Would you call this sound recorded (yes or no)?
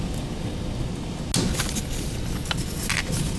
yes